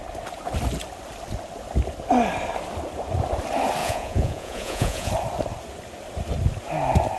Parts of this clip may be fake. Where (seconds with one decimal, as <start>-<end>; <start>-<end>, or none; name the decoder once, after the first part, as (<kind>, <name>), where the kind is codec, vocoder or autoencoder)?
3.8-5.1 (vocoder, Vocos)